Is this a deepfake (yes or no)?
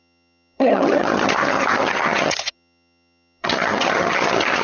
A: yes